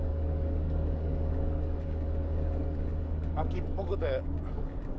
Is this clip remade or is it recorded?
remade